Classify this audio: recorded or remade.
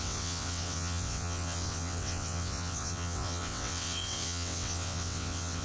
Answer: remade